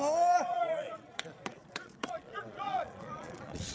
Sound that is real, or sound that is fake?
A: fake